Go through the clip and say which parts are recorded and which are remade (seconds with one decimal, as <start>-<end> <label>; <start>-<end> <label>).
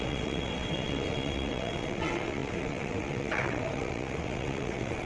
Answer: 0.0-5.1 remade